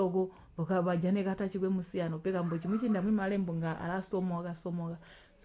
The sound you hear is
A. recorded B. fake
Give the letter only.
A